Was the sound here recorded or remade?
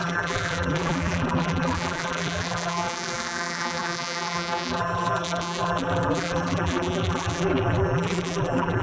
remade